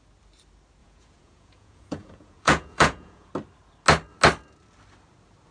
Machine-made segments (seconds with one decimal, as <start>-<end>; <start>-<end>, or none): 0.8-3.3